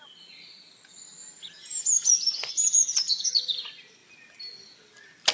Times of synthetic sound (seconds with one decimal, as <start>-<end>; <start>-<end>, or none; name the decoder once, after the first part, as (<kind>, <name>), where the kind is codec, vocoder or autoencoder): 1.2-3.3 (vocoder, Vocos)